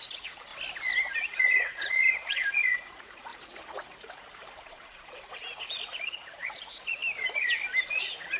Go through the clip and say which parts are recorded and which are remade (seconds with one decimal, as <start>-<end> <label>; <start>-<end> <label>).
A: 0.0-0.5 remade; 0.5-1.0 recorded; 1.0-7.0 remade; 7.0-7.9 recorded; 7.9-8.4 remade